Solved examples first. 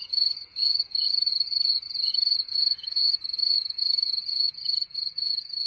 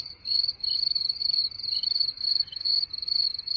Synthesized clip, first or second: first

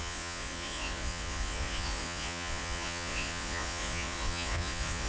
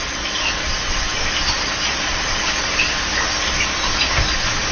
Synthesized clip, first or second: first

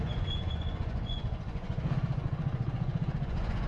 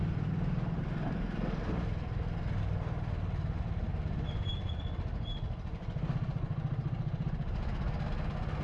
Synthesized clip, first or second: first